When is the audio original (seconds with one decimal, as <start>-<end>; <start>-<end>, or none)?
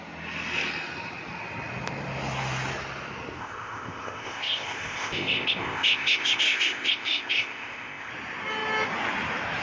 0.0-3.4; 8.1-9.6